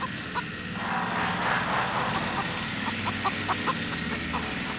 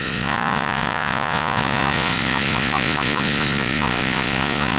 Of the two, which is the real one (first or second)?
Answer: first